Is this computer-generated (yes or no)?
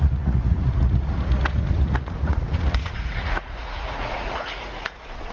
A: yes